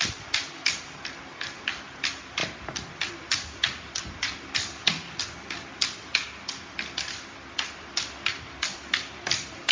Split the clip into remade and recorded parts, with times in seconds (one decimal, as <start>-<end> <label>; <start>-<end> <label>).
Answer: 0.0-9.7 recorded